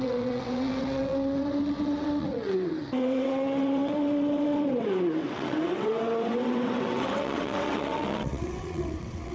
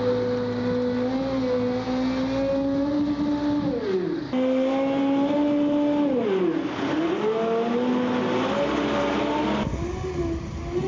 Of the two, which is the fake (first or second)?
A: first